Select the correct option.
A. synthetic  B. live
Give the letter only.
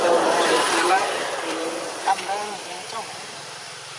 A